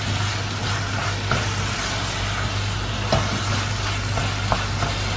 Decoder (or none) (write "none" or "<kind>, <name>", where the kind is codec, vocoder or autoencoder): none